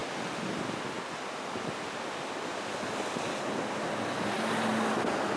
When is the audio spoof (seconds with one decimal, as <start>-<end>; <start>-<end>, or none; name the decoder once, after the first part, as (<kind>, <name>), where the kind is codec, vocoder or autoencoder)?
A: none